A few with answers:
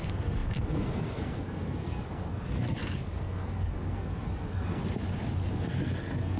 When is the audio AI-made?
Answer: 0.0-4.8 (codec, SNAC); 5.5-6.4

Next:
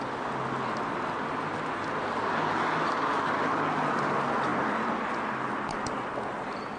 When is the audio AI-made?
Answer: none

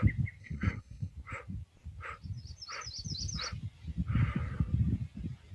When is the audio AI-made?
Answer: 0.4-1.1 (codec, SNAC)

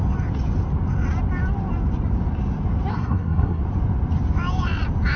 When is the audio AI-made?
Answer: 2.9-3.6 (codec, SNAC)

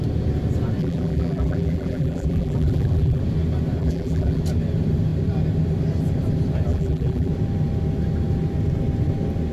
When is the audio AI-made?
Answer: 0.8-3.2 (vocoder, BigVGAN v2); 3.8-4.4; 6.7-7.3

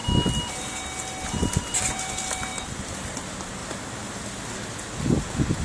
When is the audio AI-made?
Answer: 1.4-2.5 (vocoder, BigVGAN v2); 3.2-3.6; 5.0-5.6